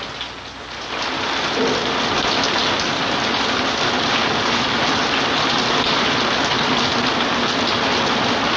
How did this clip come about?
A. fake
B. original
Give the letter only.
B